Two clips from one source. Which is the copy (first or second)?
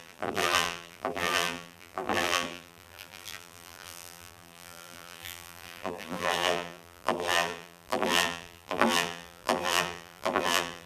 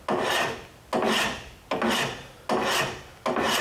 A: first